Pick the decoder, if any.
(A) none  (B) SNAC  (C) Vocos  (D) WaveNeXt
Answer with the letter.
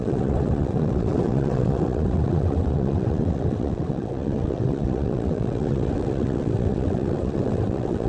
D